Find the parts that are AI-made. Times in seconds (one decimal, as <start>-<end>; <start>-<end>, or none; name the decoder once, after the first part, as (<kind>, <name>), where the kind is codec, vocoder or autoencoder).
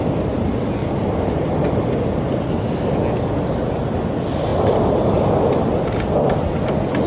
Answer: none